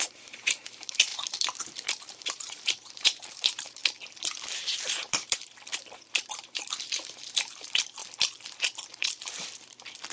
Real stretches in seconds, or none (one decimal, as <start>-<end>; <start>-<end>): 3.8-4.6; 8.0-8.9